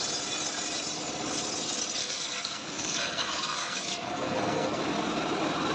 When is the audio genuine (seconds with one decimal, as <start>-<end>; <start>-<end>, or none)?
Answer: 0.0-2.0; 4.8-5.7